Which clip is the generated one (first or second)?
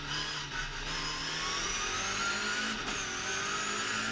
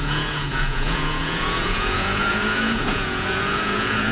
second